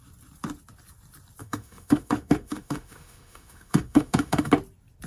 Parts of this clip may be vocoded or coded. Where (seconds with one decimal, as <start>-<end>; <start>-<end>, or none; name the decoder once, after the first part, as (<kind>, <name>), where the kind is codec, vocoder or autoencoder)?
1.4-4.5 (autoencoder, DAC-VAE)